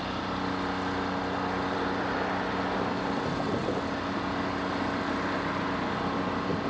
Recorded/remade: recorded